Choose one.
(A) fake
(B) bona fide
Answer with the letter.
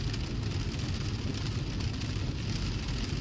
B